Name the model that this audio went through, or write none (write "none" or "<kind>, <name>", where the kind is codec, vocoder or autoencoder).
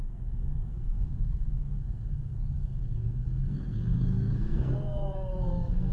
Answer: codec, SNAC